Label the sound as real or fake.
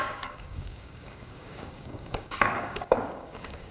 fake